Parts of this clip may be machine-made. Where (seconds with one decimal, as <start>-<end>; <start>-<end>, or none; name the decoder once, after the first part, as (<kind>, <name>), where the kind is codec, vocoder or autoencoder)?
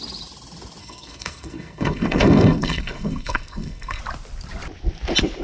0.8-4.0 (codec, SNAC)